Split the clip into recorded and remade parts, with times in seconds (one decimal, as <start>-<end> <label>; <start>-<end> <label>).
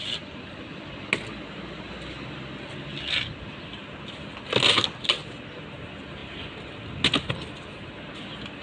0.0-8.6 recorded